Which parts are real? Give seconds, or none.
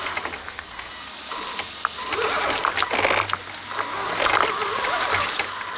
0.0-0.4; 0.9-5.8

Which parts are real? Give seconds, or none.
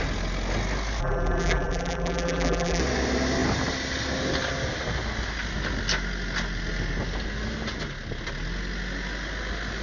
0.0-1.0; 2.8-9.8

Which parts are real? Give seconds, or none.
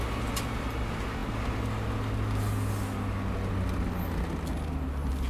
0.0-5.3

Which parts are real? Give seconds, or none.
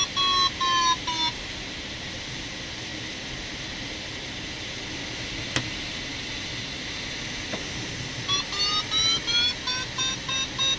0.0-10.8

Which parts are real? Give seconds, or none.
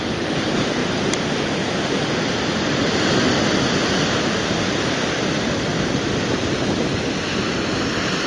0.0-8.3